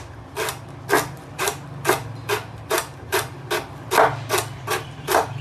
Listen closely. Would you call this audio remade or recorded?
recorded